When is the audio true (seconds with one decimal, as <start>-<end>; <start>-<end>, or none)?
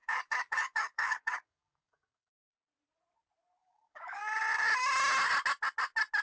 2.3-3.6; 4.2-6.2